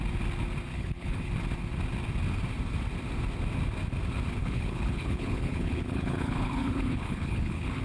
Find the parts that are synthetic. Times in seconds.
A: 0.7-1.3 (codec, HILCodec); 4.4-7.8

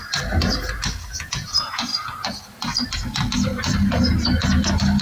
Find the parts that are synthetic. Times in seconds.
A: 1.2-1.9 (vocoder, Vocos)

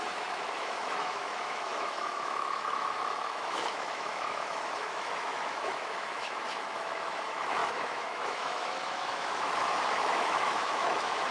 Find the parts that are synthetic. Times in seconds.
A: 0.0-11.3 (autoencoder, DAC-VAE)

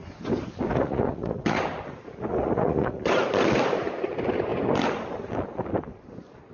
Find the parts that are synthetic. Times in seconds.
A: 0.7-1.6 (vocoder, Vocos); 2.3-3.1

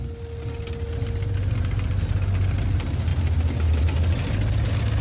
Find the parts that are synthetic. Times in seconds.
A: none

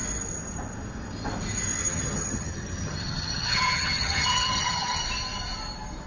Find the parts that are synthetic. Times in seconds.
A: 1.8-5.0 (vocoder, HiFi-GAN)

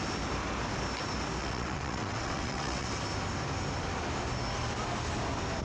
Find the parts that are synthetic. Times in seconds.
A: 1.4-2.9 (vocoder, WaveNeXt)